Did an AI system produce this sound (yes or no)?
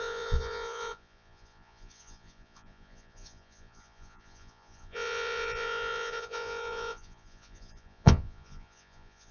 yes